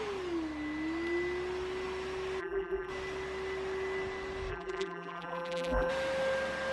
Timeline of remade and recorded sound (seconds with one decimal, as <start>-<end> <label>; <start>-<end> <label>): 0.0-2.4 recorded; 2.4-2.9 remade; 2.9-4.5 recorded; 4.5-5.9 remade; 5.9-6.7 recorded